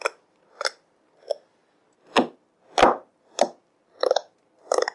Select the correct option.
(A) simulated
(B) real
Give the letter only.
B